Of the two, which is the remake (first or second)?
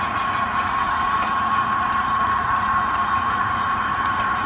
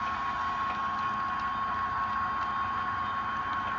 first